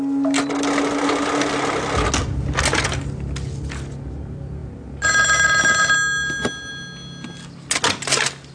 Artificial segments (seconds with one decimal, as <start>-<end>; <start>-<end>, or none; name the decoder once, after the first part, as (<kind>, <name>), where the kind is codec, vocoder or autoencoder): none